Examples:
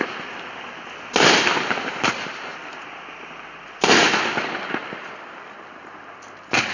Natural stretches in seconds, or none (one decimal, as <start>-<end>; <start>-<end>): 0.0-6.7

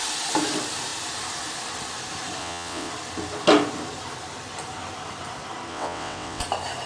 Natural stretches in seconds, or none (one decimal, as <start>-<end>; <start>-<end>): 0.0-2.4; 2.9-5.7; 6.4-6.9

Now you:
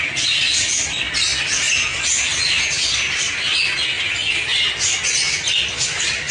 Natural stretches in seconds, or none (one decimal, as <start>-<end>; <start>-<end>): 1.9-5.5